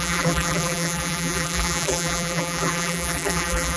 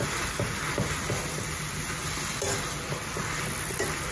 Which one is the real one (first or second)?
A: second